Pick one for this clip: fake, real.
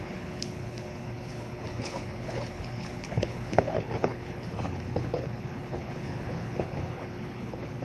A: fake